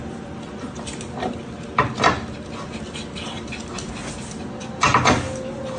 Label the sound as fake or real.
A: real